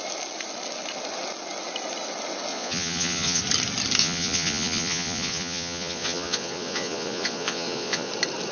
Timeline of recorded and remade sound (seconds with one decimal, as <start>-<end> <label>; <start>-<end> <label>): 0.0-2.5 recorded; 2.5-3.4 remade; 3.4-4.0 recorded; 4.0-8.1 remade; 8.1-8.5 recorded